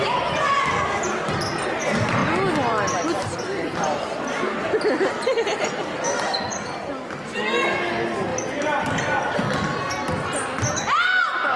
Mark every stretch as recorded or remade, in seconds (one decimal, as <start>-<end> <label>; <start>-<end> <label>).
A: 0.0-11.6 recorded